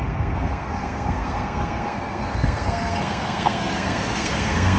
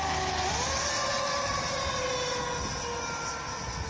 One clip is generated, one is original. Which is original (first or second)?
second